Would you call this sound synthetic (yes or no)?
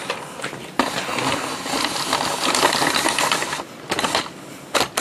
no